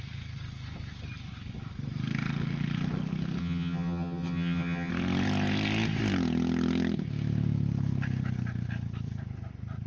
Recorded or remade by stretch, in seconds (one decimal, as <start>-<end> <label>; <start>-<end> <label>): 0.0-3.4 recorded; 3.4-4.9 remade; 4.9-9.9 recorded